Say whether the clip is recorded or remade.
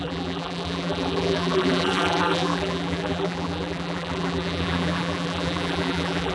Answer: remade